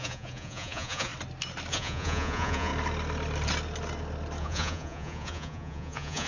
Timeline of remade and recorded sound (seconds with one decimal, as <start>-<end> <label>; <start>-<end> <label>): 0.0-1.1 remade; 1.1-1.7 recorded; 1.7-2.7 remade; 2.7-4.4 recorded; 4.4-6.3 remade